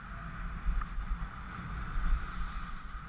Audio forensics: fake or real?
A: real